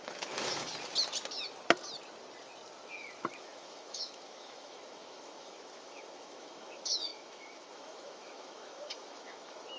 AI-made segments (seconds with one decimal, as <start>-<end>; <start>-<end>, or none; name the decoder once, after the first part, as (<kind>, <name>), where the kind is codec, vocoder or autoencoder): 0.0-0.7 (autoencoder, DAC-VAE); 3.4-9.8